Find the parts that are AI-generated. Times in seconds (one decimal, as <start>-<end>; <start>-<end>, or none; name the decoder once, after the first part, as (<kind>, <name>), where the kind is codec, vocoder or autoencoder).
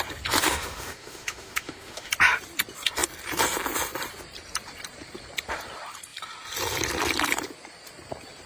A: 0.4-2.1 (autoencoder, DAC-VAE)